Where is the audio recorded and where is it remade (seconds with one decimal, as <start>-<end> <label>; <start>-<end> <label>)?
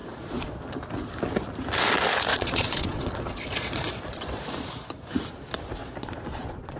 0.0-0.6 remade; 0.6-2.3 recorded; 2.3-4.4 remade; 4.4-5.8 recorded; 5.8-6.8 remade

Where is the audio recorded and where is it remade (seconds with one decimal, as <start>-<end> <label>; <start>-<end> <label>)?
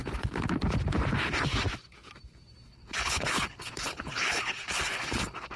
0.0-2.7 recorded; 2.7-5.6 remade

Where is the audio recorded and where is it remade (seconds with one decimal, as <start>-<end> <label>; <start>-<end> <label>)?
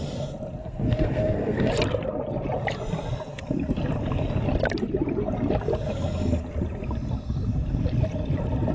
0.0-0.6 recorded; 0.6-1.7 remade; 1.7-8.7 recorded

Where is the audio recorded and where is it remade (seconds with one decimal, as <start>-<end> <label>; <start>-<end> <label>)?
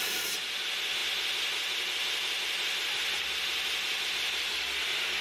0.0-5.2 recorded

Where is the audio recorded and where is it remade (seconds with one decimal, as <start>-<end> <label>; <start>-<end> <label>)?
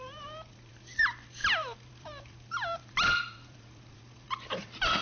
0.0-5.0 remade